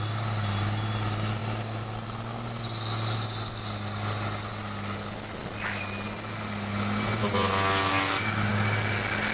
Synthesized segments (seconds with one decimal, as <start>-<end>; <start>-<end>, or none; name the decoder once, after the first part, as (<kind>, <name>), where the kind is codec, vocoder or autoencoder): none